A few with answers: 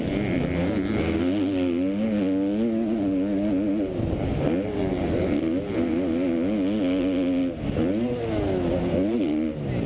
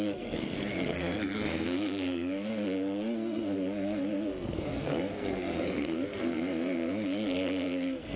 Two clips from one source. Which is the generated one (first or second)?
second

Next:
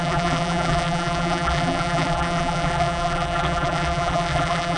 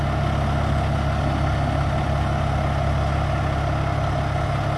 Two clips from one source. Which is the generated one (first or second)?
first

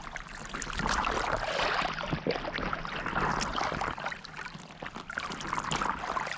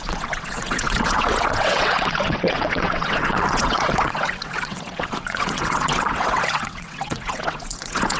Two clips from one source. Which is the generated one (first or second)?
second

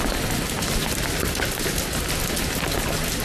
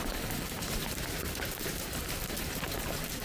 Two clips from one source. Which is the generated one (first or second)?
second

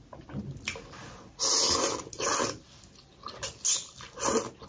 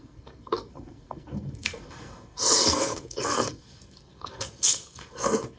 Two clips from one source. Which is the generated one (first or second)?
second